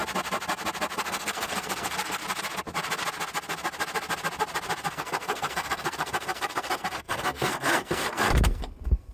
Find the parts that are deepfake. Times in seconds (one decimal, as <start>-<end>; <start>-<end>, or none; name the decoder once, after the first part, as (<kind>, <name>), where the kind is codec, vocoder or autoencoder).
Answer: 1.0-2.2 (codec, SNAC); 4.9-9.1